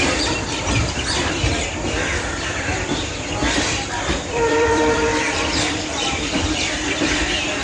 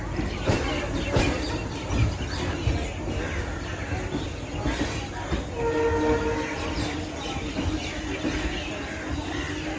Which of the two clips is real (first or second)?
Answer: second